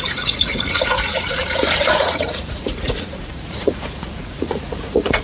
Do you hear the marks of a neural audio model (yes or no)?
yes